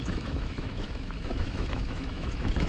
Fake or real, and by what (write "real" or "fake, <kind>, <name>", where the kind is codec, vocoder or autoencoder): fake, autoencoder, DAC-VAE